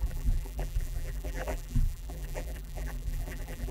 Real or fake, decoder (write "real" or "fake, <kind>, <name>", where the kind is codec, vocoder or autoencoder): fake, vocoder, BigVGAN v2